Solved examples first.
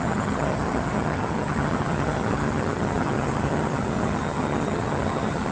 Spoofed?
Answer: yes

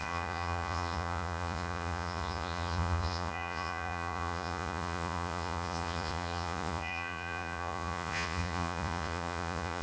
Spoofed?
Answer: yes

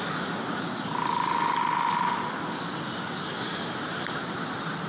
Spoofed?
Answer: no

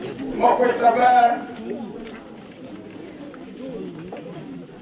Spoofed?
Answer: yes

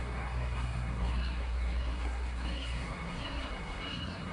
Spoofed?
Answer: yes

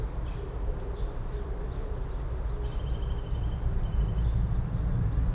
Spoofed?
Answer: no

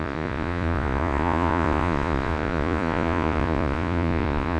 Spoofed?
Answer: yes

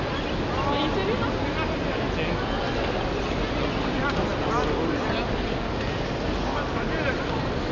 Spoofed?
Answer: no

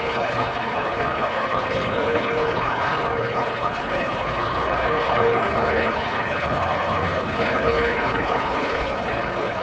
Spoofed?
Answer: yes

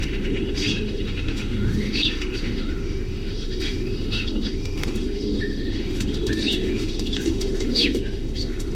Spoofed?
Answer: yes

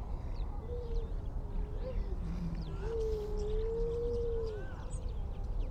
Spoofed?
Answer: no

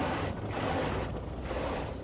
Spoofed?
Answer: no